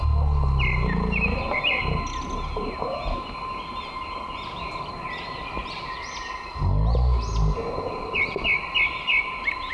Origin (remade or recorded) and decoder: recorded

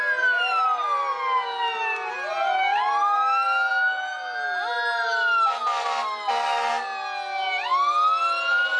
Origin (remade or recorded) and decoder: recorded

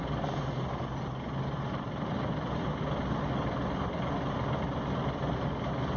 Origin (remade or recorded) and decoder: recorded